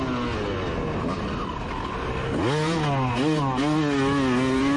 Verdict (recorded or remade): recorded